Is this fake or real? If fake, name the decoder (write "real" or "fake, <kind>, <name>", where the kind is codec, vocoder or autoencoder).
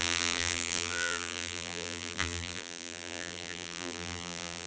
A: fake, vocoder, BigVGAN v2